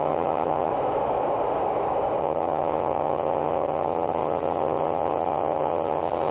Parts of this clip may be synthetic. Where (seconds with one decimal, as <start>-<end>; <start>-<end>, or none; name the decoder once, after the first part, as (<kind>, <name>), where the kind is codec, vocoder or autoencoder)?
0.0-0.7 (vocoder, HiFi-GAN); 2.2-6.3